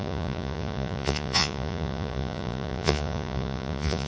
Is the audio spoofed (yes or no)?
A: yes